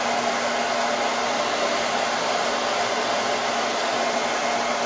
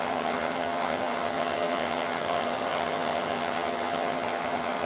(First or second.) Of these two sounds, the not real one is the second